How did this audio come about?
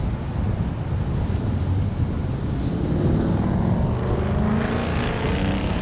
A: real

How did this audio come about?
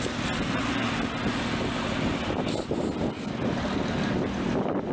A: real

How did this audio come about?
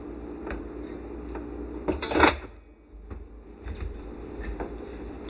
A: real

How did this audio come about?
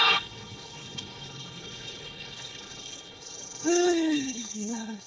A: fake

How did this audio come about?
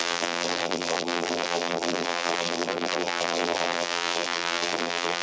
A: fake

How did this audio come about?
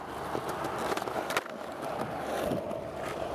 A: real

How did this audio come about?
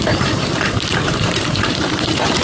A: fake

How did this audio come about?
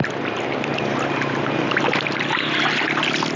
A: real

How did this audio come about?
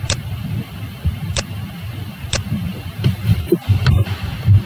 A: fake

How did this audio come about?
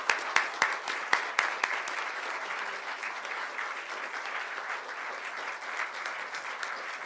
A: real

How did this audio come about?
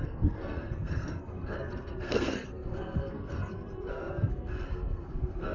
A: fake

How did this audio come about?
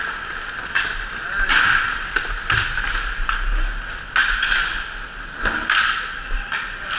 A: real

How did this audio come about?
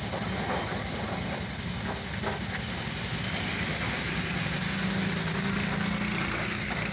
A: real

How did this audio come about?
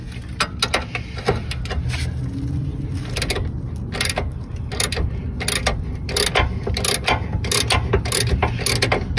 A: real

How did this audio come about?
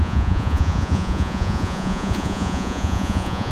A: fake